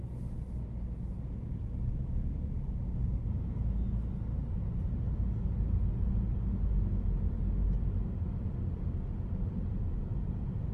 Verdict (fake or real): real